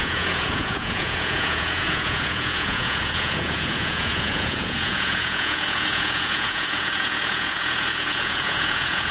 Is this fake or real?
fake